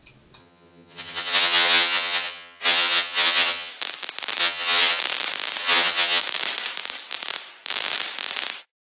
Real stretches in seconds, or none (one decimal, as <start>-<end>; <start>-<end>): 0.0-0.4; 3.7-4.4; 5.0-5.6; 6.2-8.9